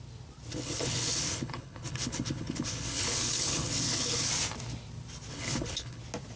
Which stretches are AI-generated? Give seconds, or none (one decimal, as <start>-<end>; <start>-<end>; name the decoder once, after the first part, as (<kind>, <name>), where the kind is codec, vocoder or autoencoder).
0.5-4.3 (codec, HILCodec); 5.3-6.0